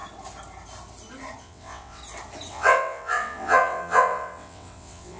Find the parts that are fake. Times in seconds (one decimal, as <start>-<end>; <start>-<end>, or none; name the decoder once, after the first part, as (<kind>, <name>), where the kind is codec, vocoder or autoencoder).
1.4-2.0 (vocoder, WaveNeXt); 2.5-5.2